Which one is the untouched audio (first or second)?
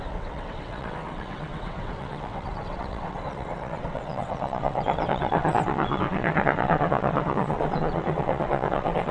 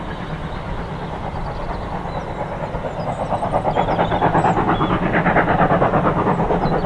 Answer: second